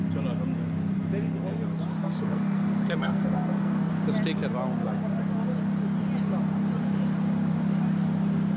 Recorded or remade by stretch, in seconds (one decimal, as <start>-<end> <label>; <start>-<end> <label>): 0.0-2.0 recorded; 2.0-3.9 remade; 3.9-8.6 recorded